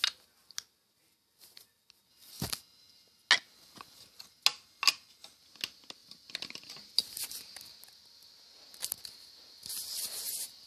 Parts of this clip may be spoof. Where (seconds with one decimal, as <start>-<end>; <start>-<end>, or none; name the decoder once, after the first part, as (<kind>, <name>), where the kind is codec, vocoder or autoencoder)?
none